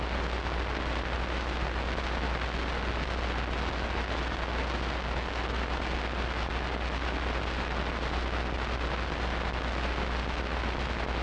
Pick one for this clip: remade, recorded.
recorded